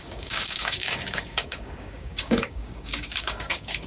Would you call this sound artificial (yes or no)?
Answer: yes